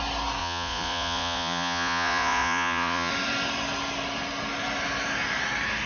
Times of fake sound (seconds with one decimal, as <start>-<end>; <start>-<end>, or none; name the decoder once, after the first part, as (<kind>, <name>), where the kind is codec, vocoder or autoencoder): 0.4-3.1 (vocoder, Vocos)